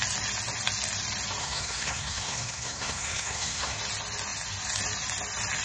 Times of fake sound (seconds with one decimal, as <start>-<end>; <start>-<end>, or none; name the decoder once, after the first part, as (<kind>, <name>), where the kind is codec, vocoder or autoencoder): 1.4-3.8 (codec, SNAC)